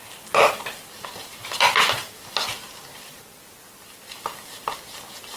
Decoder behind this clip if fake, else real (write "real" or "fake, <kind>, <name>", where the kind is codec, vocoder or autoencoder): real